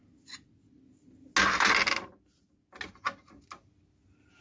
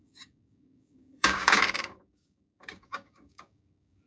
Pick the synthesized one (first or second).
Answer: second